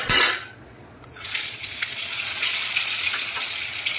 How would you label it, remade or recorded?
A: remade